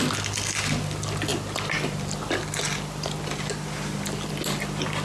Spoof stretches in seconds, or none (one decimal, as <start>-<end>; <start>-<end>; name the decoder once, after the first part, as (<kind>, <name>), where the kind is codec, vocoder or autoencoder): none